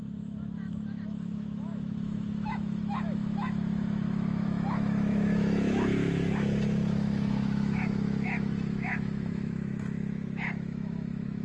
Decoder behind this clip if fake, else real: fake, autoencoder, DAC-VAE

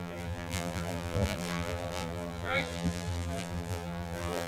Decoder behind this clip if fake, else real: fake, vocoder, BigVGAN v2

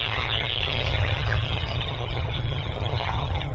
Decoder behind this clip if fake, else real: fake, vocoder, HiFi-GAN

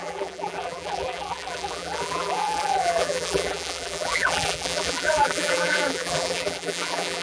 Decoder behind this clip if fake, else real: fake, vocoder, BigVGAN v2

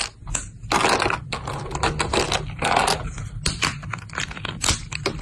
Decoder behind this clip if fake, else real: real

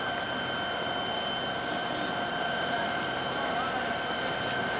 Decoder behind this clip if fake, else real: real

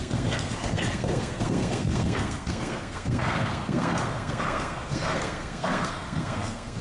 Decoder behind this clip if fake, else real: fake, codec, SNAC